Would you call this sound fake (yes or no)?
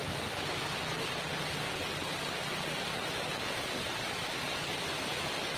no